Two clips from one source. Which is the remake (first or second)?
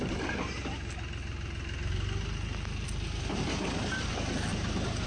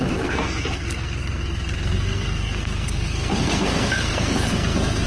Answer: second